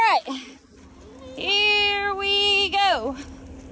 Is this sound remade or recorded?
recorded